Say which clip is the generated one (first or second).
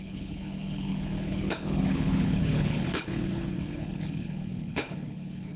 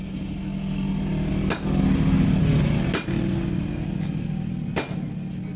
first